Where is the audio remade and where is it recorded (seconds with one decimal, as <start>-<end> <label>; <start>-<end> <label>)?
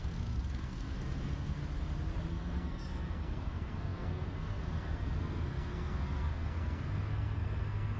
0.0-1.6 remade; 1.6-2.3 recorded; 2.3-8.0 remade